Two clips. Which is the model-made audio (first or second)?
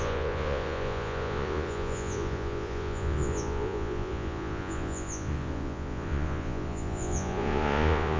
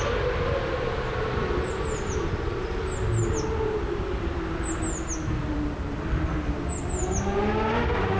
first